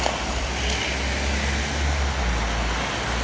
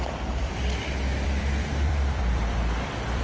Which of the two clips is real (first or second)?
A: first